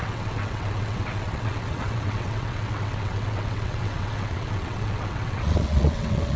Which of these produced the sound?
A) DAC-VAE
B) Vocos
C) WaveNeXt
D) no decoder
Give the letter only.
C